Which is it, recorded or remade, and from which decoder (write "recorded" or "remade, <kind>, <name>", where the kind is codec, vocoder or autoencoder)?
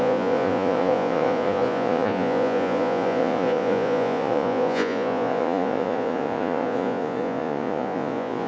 remade, vocoder, Vocos